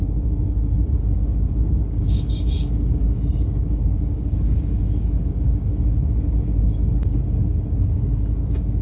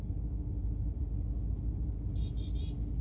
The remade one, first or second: first